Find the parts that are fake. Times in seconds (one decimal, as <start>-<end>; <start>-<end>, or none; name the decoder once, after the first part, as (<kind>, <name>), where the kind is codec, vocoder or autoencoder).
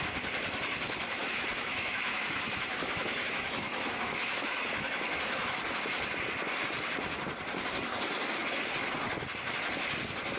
1.2-5.6 (autoencoder, DAC-VAE)